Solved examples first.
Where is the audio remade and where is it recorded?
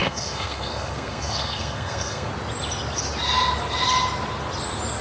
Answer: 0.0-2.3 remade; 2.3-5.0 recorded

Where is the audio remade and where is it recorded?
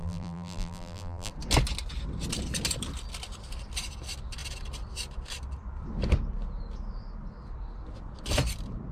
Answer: 0.0-1.3 remade; 1.3-8.9 recorded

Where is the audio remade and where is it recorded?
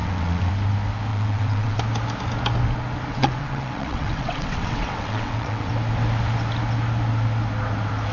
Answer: 0.0-0.5 remade; 0.5-1.1 recorded; 1.1-1.8 remade; 1.8-3.1 recorded; 3.1-5.7 remade; 5.7-8.1 recorded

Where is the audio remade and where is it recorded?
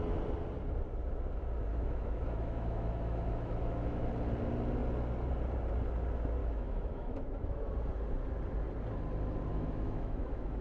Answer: 0.0-1.7 recorded; 1.7-4.1 remade; 4.1-6.4 recorded; 6.4-7.7 remade; 7.7-9.5 recorded; 9.5-10.6 remade